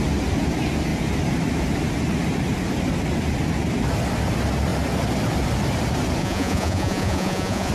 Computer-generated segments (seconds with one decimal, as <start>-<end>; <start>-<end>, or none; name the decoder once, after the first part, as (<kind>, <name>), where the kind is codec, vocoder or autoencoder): 6.2-7.7 (vocoder, Vocos)